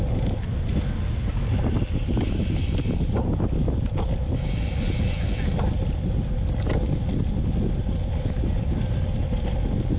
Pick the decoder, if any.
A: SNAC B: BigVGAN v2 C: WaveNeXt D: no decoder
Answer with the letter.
D